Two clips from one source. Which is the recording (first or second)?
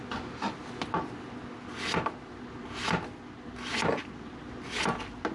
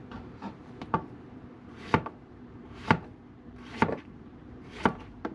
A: first